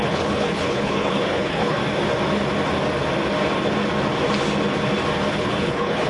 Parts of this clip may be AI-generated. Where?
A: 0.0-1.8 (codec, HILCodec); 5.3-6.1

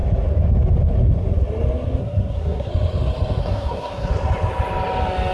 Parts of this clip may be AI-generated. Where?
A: 2.0-2.7 (codec, SNAC); 3.4-4.1